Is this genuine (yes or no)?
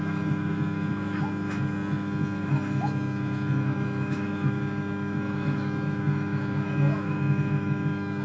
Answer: no